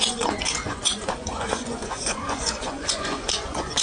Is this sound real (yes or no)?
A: no